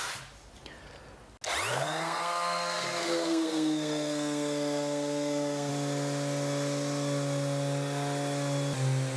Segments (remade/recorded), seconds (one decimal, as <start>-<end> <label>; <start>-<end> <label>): 0.0-1.7 recorded; 1.7-5.7 remade; 5.7-9.2 recorded